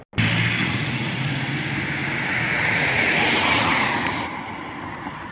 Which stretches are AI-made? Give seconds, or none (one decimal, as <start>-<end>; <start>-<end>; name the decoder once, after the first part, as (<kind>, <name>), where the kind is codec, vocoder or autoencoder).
0.6-1.3 (vocoder, Vocos); 2.0-4.1